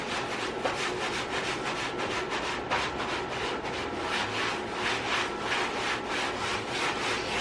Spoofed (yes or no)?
no